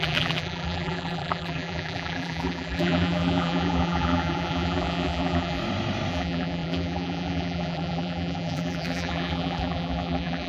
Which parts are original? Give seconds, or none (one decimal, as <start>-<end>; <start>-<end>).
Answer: 5.6-6.1